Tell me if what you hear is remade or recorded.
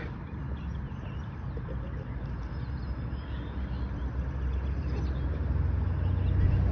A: recorded